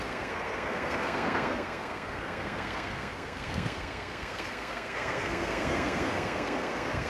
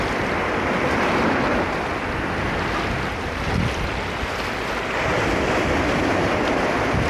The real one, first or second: second